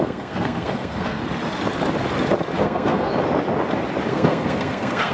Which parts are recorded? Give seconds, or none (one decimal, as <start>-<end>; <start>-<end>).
1.2-2.6; 3.1-4.1